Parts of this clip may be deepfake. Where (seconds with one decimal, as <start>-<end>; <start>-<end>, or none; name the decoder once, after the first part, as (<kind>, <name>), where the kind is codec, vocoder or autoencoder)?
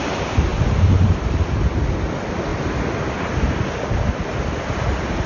0.5-1.6 (vocoder, BigVGAN v2)